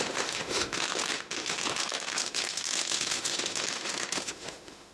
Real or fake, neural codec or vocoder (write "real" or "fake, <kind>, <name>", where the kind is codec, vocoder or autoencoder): fake, autoencoder, DAC-VAE